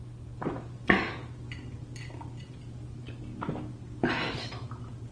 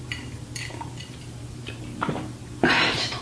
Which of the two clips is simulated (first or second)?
second